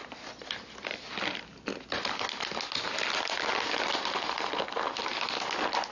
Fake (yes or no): no